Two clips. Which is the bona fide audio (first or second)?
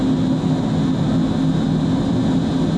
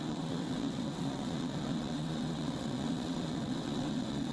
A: first